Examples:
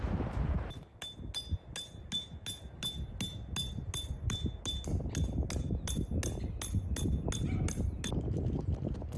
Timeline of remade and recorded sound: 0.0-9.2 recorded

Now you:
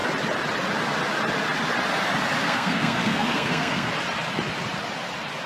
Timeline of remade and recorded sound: 0.0-2.4 recorded; 2.4-3.9 remade; 3.9-5.5 recorded

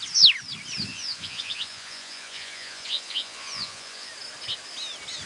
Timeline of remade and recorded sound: 0.0-0.9 recorded; 0.9-4.1 remade; 4.1-5.3 recorded

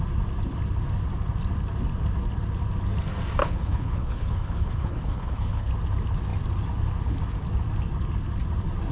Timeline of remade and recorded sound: 0.0-3.4 recorded; 3.4-5.7 remade; 5.7-8.9 recorded

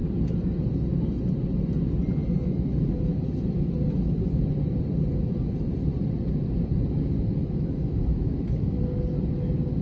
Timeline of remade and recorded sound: 0.0-2.2 recorded; 2.2-3.7 remade; 3.7-7.4 recorded; 7.4-8.8 remade; 8.8-9.8 recorded

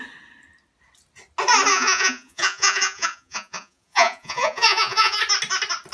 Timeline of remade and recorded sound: 0.0-1.7 recorded; 1.7-5.2 remade; 5.2-5.9 recorded

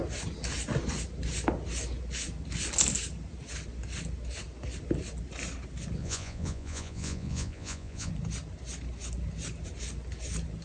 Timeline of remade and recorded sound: 0.0-6.0 recorded; 6.0-8.1 remade; 8.1-10.6 recorded

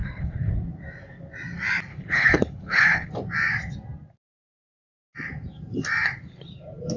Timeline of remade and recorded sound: 0.0-0.5 remade; 0.5-1.9 recorded; 1.9-3.1 remade; 3.1-7.0 recorded